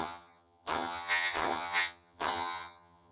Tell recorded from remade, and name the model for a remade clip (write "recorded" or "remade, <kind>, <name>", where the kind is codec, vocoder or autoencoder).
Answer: remade, vocoder, HiFi-GAN